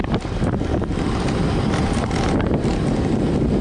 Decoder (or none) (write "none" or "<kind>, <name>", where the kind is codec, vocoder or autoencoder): none